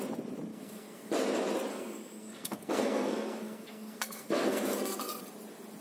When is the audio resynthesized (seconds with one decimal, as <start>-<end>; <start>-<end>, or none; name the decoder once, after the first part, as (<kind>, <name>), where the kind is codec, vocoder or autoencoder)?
0.5-1.1 (codec, SNAC); 1.7-5.2